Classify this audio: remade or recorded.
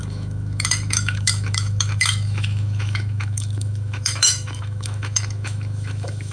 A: remade